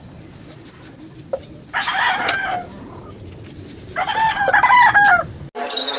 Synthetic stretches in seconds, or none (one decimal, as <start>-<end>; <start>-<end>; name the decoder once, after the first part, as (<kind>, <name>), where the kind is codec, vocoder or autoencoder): none